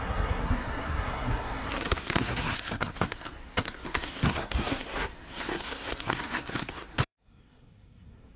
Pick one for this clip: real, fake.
fake